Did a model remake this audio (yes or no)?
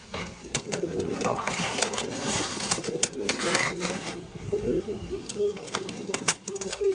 yes